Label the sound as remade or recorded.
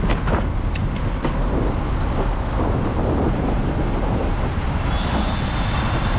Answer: recorded